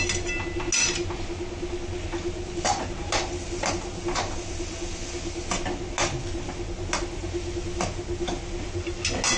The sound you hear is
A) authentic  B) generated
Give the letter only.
A